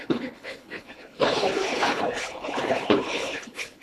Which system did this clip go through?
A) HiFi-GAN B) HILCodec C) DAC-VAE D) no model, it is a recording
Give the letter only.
B